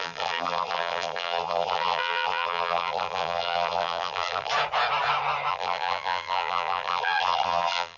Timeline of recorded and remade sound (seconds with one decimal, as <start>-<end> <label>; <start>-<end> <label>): 0.0-4.5 remade; 4.5-5.5 recorded; 5.5-8.0 remade

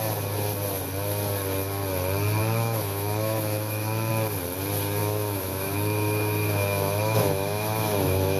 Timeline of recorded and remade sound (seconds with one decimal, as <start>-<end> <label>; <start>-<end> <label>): 0.0-2.4 recorded; 2.4-4.1 remade; 4.1-5.0 recorded; 5.0-8.4 remade

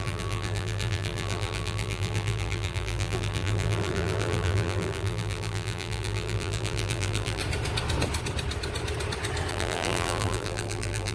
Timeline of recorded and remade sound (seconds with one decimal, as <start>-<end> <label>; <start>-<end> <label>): 0.0-7.4 remade; 7.4-9.5 recorded; 9.5-11.1 remade

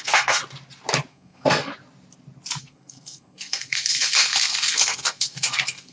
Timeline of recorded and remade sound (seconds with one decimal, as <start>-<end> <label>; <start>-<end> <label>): 0.0-0.4 remade; 0.4-1.1 recorded; 1.1-1.7 remade; 1.7-2.6 recorded; 2.6-5.9 remade

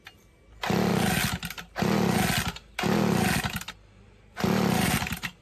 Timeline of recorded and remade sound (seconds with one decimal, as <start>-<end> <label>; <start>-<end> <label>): 0.0-5.4 recorded

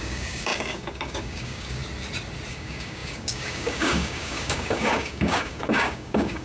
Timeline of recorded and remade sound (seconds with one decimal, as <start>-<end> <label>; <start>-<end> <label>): 0.0-1.8 remade; 1.8-2.5 recorded; 2.5-6.4 remade

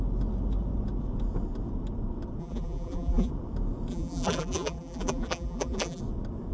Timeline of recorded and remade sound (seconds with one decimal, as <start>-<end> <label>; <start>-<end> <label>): 0.0-2.4 recorded; 2.4-3.3 remade; 3.3-3.9 recorded; 3.9-6.0 remade; 6.0-6.5 recorded